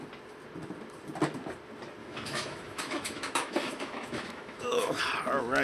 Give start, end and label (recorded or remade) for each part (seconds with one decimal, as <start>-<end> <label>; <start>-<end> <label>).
0.0-2.0 recorded; 2.0-5.0 remade; 5.0-5.6 recorded